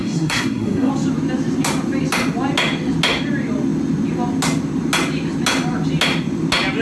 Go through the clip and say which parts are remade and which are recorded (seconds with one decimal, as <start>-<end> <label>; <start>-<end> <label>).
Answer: 0.0-0.9 remade; 0.9-6.8 recorded

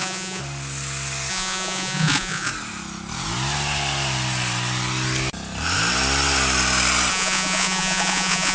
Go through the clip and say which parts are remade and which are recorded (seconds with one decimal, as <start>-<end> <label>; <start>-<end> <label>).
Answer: 0.0-0.4 remade; 0.4-1.3 recorded; 1.3-2.5 remade; 2.5-7.1 recorded; 7.1-8.5 remade

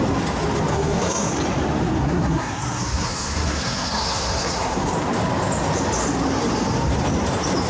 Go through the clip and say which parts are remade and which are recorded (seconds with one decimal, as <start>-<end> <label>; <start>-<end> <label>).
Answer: 0.0-0.7 recorded; 0.7-1.3 remade; 1.3-2.0 recorded; 2.0-4.9 remade; 4.9-7.7 recorded

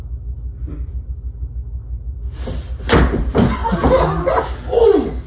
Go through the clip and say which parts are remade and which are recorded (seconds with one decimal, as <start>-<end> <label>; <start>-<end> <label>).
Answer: 0.0-0.5 recorded; 0.5-1.1 remade; 1.1-5.3 recorded

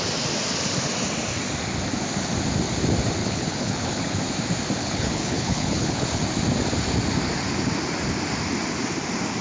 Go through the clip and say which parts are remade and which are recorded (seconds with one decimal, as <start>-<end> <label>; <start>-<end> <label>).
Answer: 0.0-3.2 recorded; 3.2-4.2 remade; 4.2-4.8 recorded; 4.8-6.2 remade; 6.2-9.4 recorded

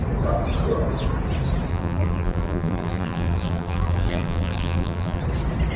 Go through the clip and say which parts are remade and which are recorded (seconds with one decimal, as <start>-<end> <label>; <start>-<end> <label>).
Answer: 0.0-1.7 recorded; 1.7-5.2 remade; 5.2-5.8 recorded

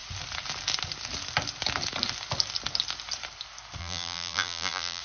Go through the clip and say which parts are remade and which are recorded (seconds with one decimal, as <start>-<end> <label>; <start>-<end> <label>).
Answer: 0.0-3.8 recorded; 3.8-5.0 remade